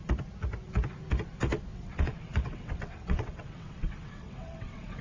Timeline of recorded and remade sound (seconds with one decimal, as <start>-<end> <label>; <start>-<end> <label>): 0.0-1.7 recorded; 1.7-5.0 remade